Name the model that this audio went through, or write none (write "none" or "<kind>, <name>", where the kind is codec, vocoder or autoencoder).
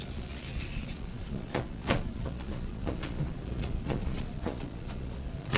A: vocoder, Vocos